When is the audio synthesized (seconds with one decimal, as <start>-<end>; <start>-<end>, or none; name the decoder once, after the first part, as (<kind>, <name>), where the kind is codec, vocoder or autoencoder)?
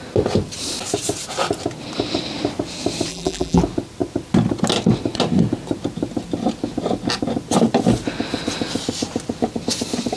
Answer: 3.1-3.6 (vocoder, BigVGAN v2)